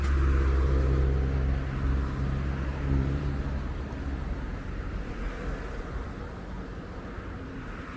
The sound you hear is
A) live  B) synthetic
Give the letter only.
A